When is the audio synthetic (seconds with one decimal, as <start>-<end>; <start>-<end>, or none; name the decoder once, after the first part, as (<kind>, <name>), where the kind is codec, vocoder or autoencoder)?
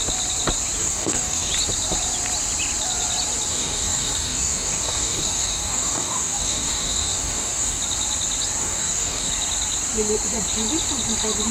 0.8-1.5 (codec, DAC); 3.5-7.8; 8.6-9.3